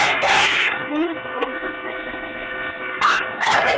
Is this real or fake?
fake